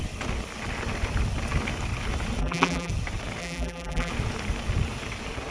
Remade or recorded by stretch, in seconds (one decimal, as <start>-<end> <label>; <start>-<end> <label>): 0.0-2.4 recorded; 2.4-2.9 remade; 2.9-3.4 recorded; 3.4-4.1 remade; 4.1-5.5 recorded